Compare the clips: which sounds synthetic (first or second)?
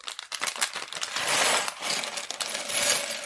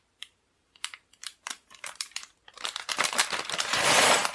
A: second